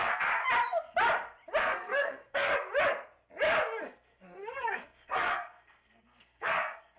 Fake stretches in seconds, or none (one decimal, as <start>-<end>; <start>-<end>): 0.0-0.4; 1.6-2.5; 3.8-7.0